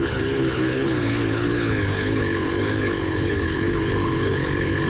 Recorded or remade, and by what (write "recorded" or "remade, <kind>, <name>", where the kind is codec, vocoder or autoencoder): remade, codec, HILCodec